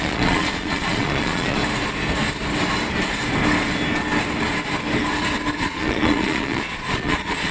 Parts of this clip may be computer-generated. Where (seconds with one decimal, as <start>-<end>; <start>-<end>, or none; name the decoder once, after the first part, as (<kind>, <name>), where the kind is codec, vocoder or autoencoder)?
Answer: 0.0-1.6 (vocoder, Vocos); 5.6-7.5

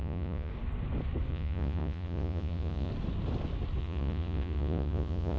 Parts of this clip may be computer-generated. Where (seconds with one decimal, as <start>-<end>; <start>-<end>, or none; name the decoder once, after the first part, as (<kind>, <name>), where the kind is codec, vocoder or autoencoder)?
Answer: 0.0-0.5 (vocoder, Vocos); 1.3-2.9; 3.8-5.4

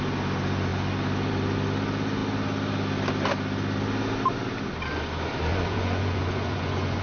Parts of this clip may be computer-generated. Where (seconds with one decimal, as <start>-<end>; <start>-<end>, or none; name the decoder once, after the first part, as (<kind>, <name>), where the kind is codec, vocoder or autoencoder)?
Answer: 5.5-7.0 (vocoder, Vocos)

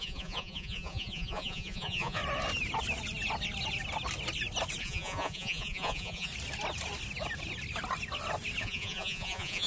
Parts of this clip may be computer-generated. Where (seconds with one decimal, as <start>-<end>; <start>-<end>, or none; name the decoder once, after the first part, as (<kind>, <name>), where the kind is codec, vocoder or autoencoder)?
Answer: 0.0-2.2 (vocoder, Vocos); 4.8-6.3; 8.6-9.7

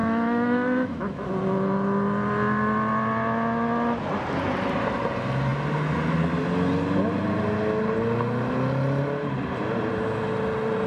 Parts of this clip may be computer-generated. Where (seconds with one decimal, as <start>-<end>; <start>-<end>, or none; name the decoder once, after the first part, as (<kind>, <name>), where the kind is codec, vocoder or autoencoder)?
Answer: 0.0-1.3 (autoencoder, DAC-VAE)

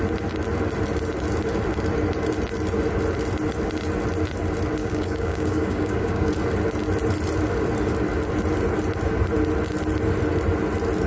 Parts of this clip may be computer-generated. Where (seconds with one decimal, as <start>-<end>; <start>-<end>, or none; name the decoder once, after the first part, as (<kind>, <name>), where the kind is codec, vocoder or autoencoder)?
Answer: 4.8-6.3 (codec, DAC)